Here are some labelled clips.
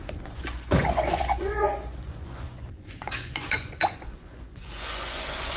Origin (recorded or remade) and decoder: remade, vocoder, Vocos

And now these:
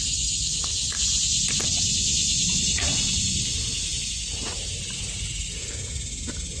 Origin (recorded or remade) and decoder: recorded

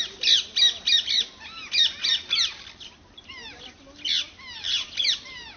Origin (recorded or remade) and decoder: recorded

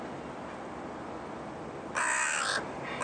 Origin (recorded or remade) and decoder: recorded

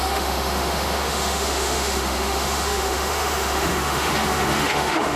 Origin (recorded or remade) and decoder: remade, autoencoder, DAC-VAE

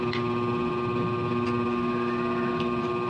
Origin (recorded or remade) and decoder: recorded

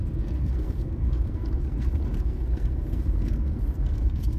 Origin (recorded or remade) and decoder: remade, codec, SNAC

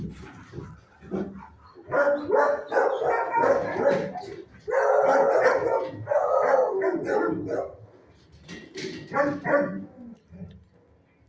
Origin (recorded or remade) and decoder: recorded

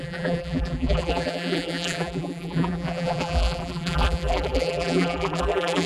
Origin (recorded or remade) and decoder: remade, vocoder, BigVGAN v2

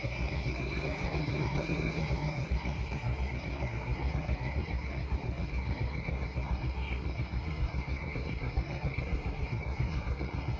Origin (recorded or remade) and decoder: remade, codec, SNAC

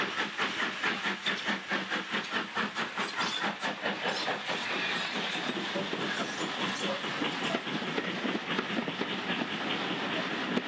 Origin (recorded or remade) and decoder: recorded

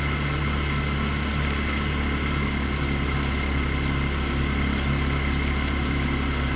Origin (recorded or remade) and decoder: recorded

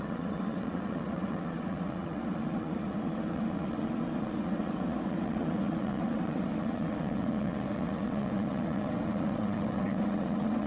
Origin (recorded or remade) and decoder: remade, vocoder, WaveNeXt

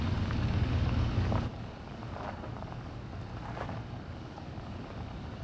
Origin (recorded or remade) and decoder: remade, codec, DAC